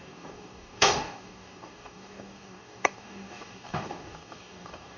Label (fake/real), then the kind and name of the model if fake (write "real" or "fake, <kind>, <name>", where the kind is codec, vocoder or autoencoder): fake, codec, DAC